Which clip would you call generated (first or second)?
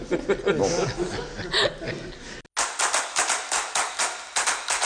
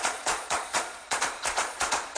second